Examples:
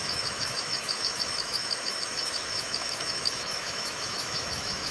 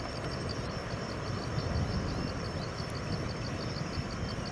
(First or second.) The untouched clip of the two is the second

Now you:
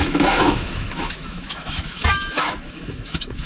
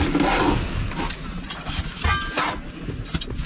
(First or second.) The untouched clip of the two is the second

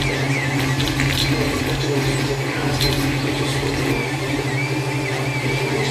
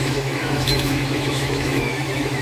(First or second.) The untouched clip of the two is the first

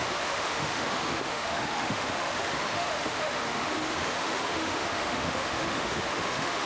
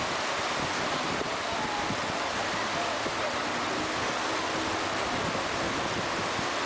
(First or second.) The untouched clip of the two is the second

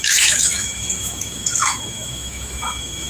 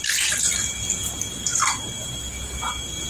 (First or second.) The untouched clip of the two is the second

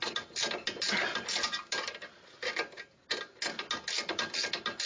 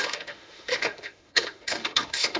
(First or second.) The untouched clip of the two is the first